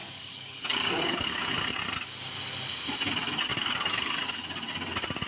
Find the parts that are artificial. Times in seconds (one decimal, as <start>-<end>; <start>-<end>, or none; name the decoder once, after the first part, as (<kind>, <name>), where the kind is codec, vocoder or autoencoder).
0.0-1.4 (codec, DAC); 3.5-4.2